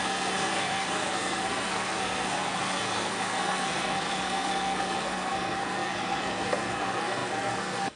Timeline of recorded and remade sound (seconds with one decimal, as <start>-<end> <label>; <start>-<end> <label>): 0.0-8.0 remade